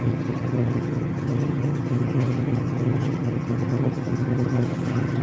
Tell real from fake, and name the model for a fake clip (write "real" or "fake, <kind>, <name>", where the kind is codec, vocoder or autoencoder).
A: fake, vocoder, HiFi-GAN